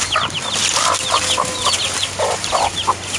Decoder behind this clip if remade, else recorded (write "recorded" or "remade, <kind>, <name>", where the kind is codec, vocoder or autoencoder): recorded